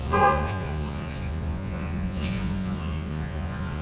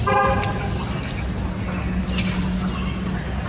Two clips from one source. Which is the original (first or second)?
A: second